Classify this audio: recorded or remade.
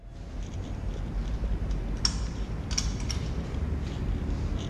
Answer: recorded